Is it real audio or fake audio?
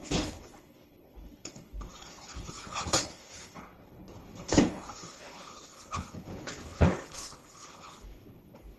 fake